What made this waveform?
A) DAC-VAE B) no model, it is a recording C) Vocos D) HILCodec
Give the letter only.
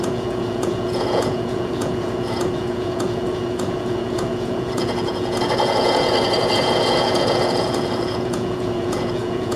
C